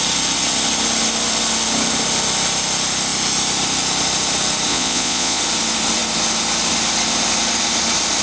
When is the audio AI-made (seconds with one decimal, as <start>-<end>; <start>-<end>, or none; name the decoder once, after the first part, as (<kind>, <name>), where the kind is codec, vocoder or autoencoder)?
4.7-5.4 (vocoder, Vocos)